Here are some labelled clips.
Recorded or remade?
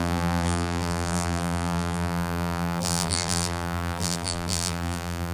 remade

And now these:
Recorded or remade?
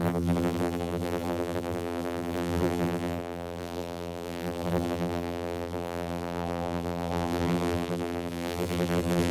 remade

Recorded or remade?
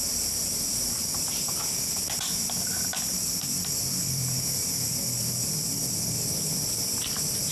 remade